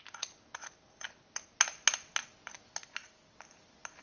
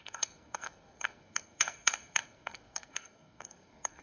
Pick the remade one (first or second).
second